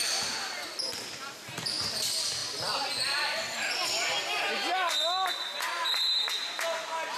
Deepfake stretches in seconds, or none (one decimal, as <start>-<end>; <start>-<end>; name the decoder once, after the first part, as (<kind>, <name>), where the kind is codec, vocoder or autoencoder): none